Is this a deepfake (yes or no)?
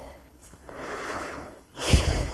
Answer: yes